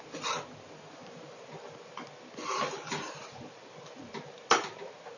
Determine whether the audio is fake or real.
real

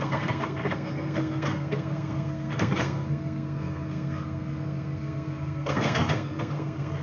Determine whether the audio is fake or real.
fake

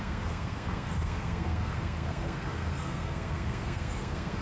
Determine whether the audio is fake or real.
fake